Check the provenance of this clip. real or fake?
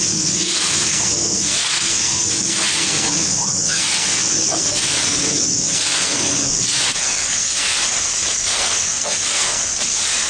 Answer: fake